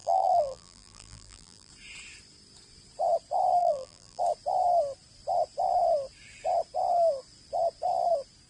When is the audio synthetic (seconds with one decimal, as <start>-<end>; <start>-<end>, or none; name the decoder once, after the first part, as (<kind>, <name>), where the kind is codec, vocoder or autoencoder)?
0.0-1.7 (vocoder, BigVGAN v2); 3.6-4.2